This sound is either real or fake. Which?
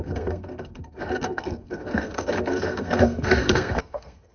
fake